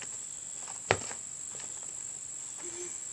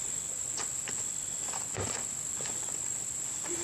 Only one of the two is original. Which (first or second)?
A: first